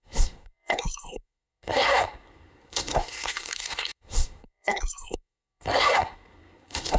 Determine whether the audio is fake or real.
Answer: fake